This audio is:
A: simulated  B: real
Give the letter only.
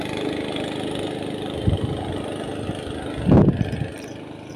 B